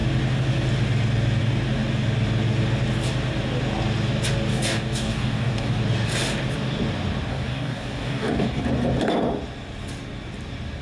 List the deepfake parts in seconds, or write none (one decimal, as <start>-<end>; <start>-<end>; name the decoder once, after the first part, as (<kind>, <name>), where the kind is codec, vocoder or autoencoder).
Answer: 4.5-5.8 (codec, DAC); 7.3-8.6